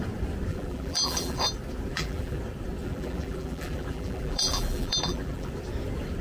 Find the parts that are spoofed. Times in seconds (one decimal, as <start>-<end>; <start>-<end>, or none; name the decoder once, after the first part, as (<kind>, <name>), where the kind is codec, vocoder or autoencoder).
0.5-1.4 (vocoder, BigVGAN v2); 1.9-2.4; 2.8-5.5